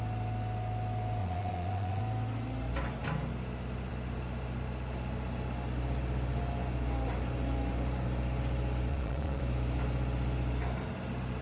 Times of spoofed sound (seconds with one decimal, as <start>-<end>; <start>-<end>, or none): 1.2-2.0; 8.9-9.4